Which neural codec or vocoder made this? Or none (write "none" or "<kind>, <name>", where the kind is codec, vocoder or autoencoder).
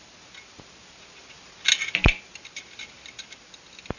none